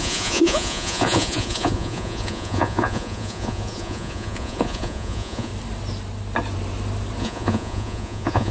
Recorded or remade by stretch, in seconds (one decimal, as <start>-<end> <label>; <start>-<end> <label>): 0.0-5.5 remade; 5.5-7.2 recorded; 7.2-8.5 remade